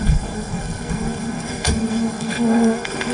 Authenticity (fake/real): fake